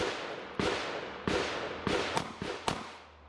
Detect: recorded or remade recorded